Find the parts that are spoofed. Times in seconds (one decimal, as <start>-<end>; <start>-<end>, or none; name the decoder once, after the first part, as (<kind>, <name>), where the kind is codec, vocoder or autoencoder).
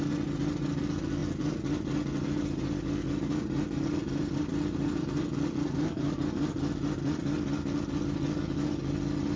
none